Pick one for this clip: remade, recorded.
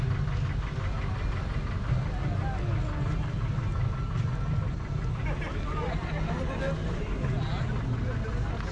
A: recorded